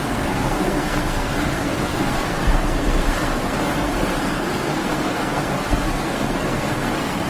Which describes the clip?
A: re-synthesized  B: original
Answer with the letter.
A